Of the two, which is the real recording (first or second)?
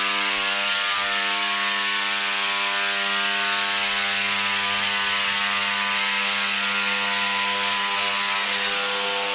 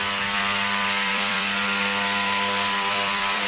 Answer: first